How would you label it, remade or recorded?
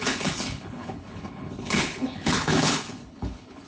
remade